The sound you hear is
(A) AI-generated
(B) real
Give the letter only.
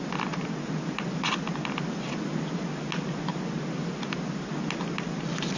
B